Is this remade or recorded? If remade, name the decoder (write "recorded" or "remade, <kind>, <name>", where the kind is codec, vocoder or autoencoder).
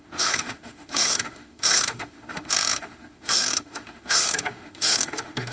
remade, autoencoder, DAC-VAE